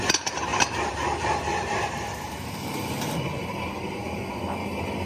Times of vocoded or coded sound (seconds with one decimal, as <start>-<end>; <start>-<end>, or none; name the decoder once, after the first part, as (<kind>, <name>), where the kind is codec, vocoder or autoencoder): 0.5-3.6 (vocoder, BigVGAN v2)